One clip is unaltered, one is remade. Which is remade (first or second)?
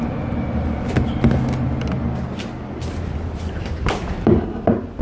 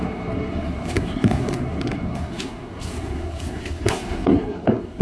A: second